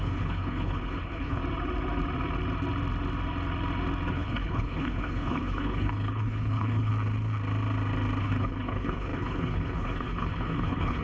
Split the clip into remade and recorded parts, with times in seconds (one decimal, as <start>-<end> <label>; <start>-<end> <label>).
0.0-1.4 remade; 1.4-4.1 recorded; 4.1-6.9 remade; 6.9-8.2 recorded; 8.2-11.0 remade